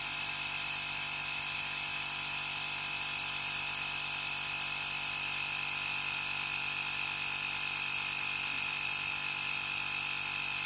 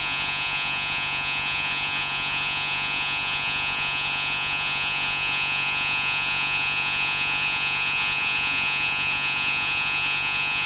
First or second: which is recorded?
first